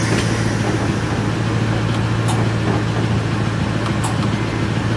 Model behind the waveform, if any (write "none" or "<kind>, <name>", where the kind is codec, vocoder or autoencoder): none